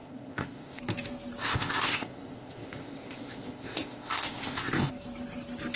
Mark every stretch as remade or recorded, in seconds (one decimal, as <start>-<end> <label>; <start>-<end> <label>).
0.0-0.8 remade; 0.8-1.4 recorded; 1.4-4.9 remade; 4.9-5.8 recorded